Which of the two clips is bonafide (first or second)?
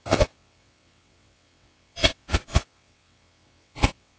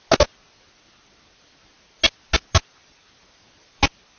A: second